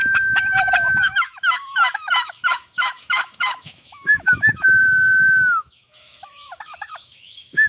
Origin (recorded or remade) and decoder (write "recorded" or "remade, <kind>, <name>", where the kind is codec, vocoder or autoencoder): remade, autoencoder, DAC-VAE